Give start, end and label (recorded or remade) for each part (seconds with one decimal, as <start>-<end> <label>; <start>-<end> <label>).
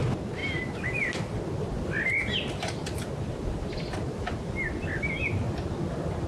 0.0-6.3 recorded